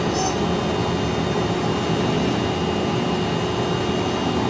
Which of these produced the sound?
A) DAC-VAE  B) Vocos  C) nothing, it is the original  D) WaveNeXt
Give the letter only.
C